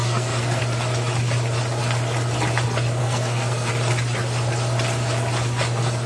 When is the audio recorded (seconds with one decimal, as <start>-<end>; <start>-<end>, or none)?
0.6-3.0; 3.7-6.1